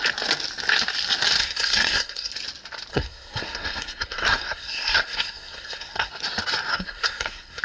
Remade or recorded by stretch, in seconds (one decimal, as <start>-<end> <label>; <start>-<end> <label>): 0.0-1.4 recorded; 1.4-2.3 remade; 2.3-2.9 recorded; 2.9-6.1 remade; 6.1-6.7 recorded; 6.7-7.6 remade